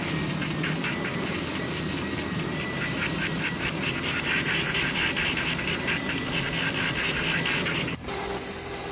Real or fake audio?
real